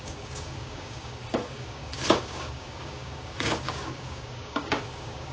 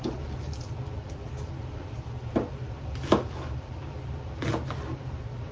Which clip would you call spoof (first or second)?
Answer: first